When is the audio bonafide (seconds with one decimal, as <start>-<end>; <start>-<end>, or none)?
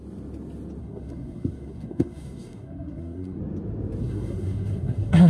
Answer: 0.0-0.8; 3.4-4.0